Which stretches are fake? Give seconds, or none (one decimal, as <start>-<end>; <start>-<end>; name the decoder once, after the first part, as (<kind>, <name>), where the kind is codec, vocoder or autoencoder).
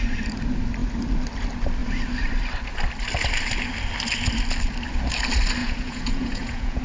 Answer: 5.6-6.8 (vocoder, Vocos)